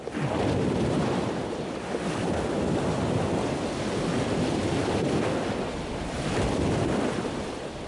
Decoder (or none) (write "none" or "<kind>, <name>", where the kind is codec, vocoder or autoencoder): none